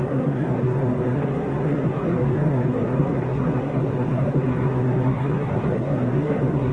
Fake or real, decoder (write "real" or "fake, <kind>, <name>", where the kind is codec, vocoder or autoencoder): fake, codec, SNAC